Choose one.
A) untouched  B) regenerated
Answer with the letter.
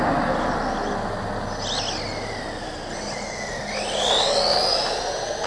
A